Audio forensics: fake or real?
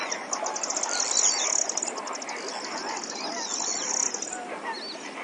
real